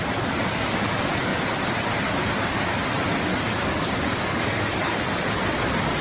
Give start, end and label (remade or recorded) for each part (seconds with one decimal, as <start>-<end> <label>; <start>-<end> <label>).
0.0-3.3 recorded; 3.3-5.0 remade; 5.0-6.0 recorded